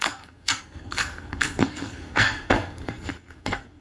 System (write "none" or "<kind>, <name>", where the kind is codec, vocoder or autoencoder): codec, SNAC